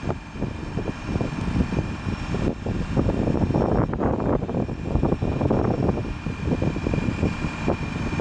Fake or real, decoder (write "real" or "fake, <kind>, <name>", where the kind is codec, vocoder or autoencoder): fake, vocoder, BigVGAN v2